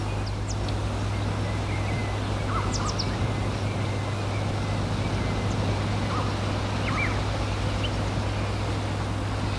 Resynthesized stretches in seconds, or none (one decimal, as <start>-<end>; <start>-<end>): none